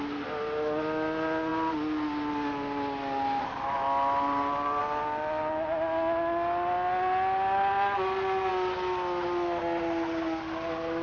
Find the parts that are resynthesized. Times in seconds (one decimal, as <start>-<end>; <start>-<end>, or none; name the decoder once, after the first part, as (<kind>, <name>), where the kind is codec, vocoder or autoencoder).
none